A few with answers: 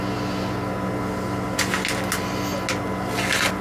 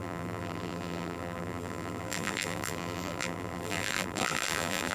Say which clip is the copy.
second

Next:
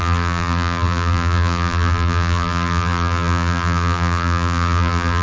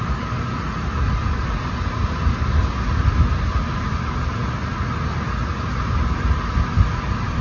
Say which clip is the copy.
first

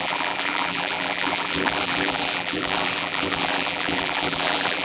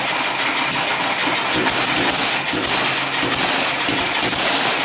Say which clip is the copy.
first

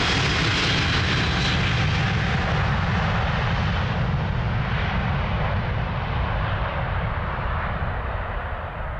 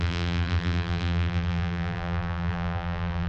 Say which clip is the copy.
second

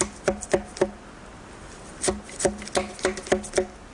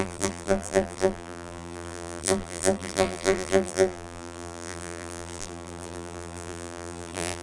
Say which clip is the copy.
second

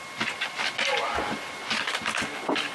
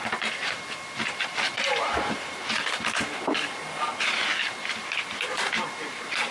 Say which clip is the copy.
second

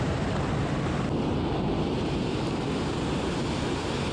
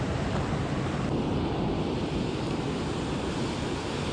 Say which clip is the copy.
second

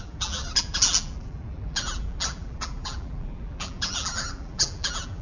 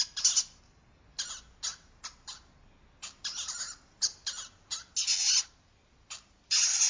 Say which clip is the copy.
first